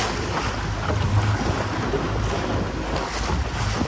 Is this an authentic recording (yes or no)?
yes